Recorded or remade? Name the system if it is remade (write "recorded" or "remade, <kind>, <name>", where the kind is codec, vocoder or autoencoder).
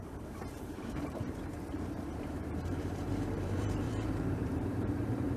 remade, vocoder, BigVGAN v2